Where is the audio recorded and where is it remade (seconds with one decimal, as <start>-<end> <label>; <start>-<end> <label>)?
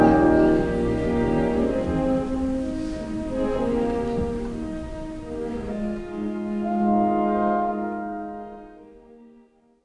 0.0-5.5 recorded; 5.5-9.8 remade